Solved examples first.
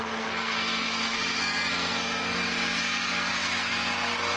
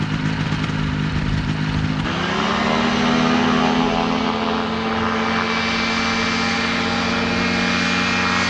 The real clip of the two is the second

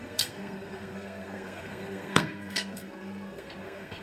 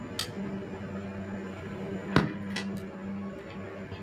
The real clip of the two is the second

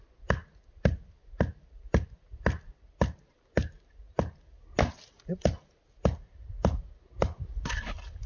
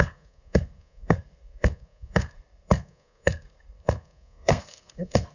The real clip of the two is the first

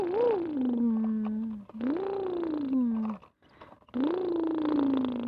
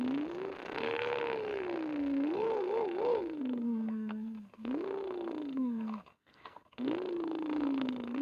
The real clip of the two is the first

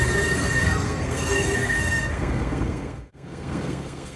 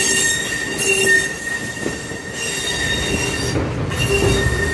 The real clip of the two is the second